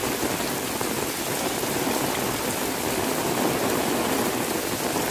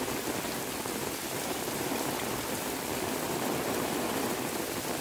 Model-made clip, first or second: second